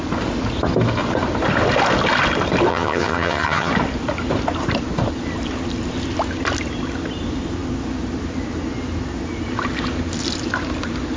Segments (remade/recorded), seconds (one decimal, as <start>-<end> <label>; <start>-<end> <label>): 0.0-2.7 recorded; 2.7-3.7 remade; 3.7-11.2 recorded